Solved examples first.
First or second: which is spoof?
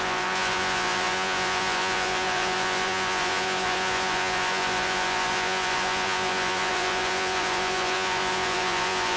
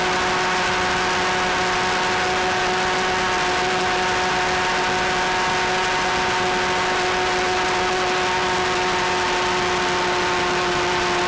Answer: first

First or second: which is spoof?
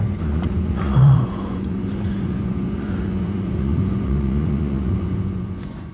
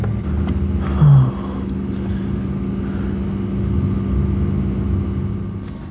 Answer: first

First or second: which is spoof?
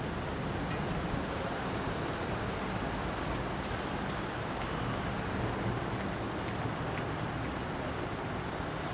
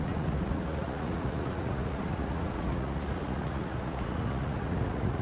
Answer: second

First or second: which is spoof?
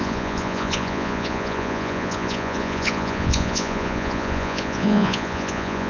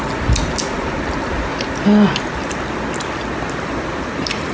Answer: first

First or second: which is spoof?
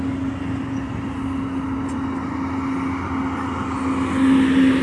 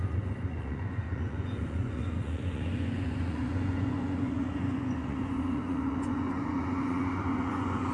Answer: second